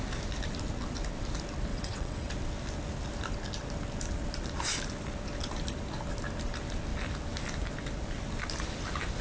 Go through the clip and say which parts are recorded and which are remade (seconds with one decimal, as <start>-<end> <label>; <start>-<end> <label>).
0.0-1.7 recorded; 1.7-2.3 remade; 2.3-9.2 recorded